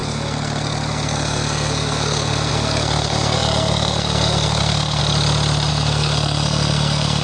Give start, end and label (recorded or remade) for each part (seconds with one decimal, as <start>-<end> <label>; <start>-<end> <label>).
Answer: 0.0-5.0 remade; 5.0-5.7 recorded; 5.7-7.2 remade